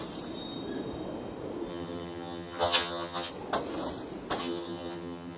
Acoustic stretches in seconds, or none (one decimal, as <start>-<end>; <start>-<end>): 0.0-1.7; 3.3-4.4